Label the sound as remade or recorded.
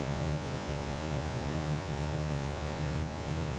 remade